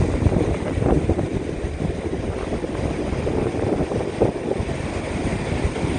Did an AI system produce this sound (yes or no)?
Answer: no